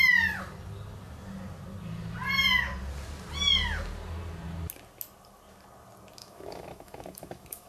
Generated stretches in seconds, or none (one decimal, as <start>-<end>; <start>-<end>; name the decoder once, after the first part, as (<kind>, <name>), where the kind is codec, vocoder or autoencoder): 6.2-7.7 (autoencoder, DAC-VAE)